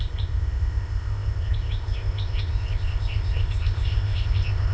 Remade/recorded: remade